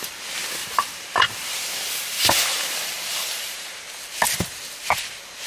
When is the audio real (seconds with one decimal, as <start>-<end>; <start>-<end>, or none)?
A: 0.0-0.6; 3.8-5.5